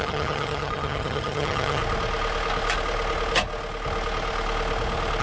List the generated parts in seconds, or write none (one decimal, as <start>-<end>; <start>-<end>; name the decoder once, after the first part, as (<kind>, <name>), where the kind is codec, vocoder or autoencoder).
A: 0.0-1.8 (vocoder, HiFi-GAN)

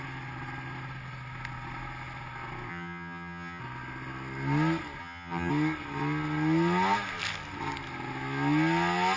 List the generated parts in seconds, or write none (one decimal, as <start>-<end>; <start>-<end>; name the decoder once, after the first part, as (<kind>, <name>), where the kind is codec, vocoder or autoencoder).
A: 2.7-3.6 (vocoder, HiFi-GAN); 5.0-5.5

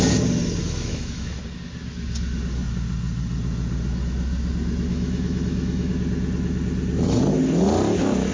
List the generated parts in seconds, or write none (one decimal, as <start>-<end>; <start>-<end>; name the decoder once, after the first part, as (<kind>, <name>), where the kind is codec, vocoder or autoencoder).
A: 0.6-1.4 (autoencoder, DAC-VAE); 4.9-5.9